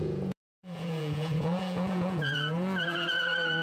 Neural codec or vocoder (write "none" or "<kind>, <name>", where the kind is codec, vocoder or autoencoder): vocoder, Vocos